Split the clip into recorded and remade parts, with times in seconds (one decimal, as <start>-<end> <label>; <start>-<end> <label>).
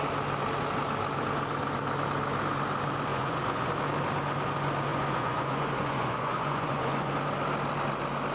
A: 0.0-3.1 recorded; 3.1-3.7 remade; 3.7-4.9 recorded; 4.9-7.1 remade; 7.1-8.3 recorded